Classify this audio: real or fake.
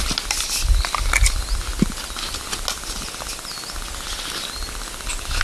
real